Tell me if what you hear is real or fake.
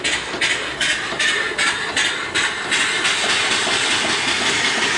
real